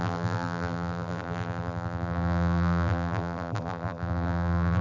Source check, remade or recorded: remade